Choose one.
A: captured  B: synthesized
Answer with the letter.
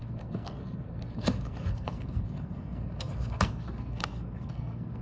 B